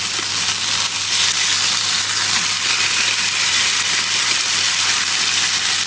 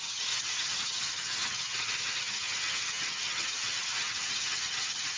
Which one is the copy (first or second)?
second